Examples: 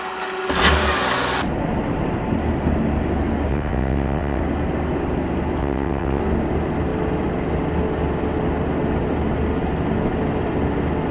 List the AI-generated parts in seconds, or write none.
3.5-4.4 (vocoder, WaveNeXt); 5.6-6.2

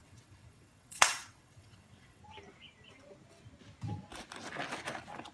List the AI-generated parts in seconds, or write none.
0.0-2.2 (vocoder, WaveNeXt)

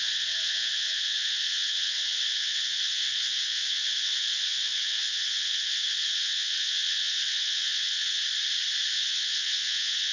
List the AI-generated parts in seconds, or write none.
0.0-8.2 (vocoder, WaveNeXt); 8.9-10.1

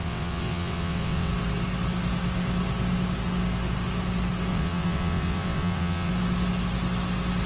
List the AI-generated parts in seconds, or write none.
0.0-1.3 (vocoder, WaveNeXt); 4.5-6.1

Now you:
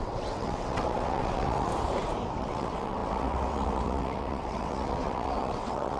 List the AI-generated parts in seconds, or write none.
0.0-1.7 (vocoder, WaveNeXt); 2.4-6.0

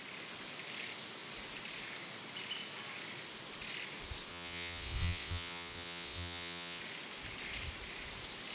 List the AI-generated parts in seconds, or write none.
4.3-6.8 (vocoder, WaveNeXt)